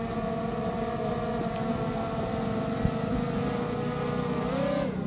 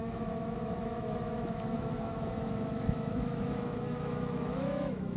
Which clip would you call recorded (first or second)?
first